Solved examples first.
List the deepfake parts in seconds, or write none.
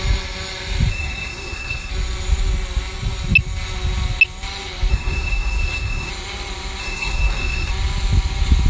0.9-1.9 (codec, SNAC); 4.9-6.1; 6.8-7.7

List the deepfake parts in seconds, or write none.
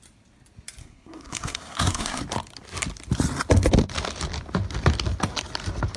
0.8-2.2 (codec, SNAC)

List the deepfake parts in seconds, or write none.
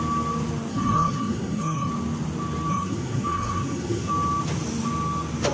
0.7-1.9 (codec, SNAC); 2.7-4.1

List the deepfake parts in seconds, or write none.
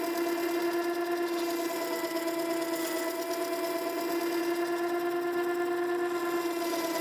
none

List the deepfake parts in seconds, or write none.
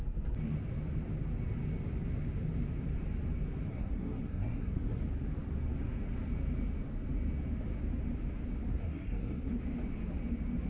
3.7-5.0 (codec, SNAC); 8.7-9.6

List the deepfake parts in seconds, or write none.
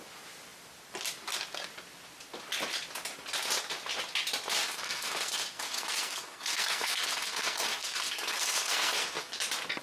4.6-9.3 (codec, SNAC)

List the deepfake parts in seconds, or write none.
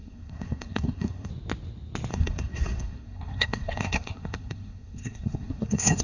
0.0-1.3 (codec, SNAC); 2.1-6.0